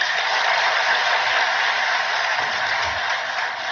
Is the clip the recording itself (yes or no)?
yes